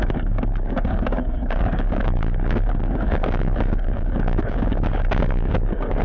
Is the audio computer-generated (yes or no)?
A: yes